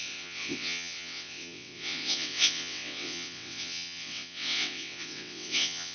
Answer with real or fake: fake